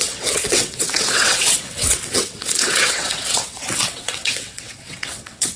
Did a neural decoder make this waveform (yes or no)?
yes